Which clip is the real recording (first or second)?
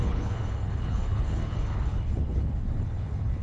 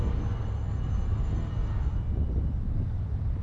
second